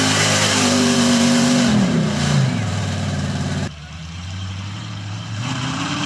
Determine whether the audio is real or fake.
fake